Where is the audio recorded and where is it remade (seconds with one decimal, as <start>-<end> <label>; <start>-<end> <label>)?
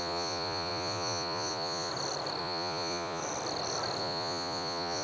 0.0-1.9 remade; 1.9-2.4 recorded; 2.4-3.2 remade; 3.2-4.0 recorded; 4.0-5.0 remade